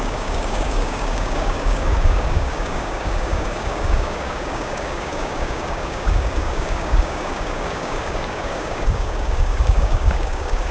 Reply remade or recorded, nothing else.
remade